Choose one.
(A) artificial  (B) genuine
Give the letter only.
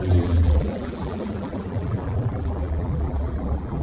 A